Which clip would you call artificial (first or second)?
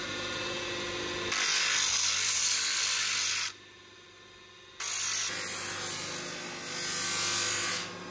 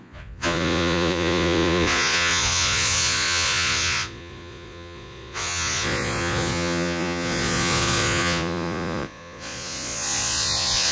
second